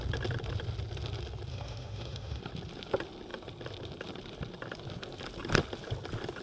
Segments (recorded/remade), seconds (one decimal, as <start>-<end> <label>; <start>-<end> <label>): 0.0-1.5 recorded; 1.5-2.4 remade; 2.4-6.4 recorded